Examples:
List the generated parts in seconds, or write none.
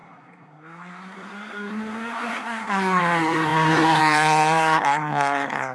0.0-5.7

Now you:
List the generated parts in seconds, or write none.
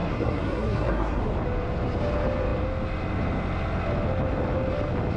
0.0-1.2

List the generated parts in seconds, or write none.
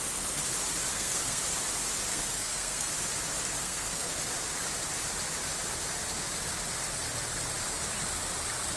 0.9-1.4; 2.1-2.9; 3.6-4.1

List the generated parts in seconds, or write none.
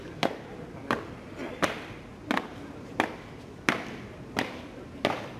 none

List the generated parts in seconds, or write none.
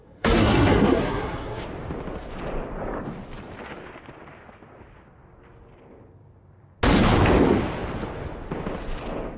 0.0-1.6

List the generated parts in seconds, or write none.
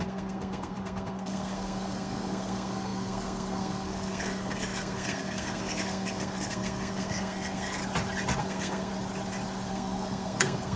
0.0-7.8; 8.4-8.9; 9.7-10.8